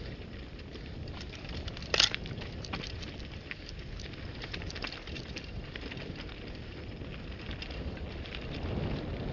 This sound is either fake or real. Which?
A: real